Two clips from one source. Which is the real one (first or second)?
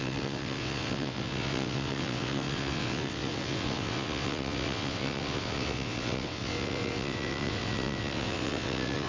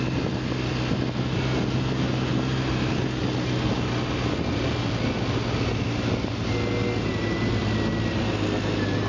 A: second